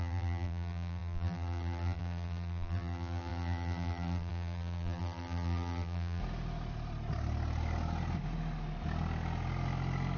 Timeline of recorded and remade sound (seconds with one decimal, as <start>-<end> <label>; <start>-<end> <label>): 0.0-6.2 remade; 6.2-10.2 recorded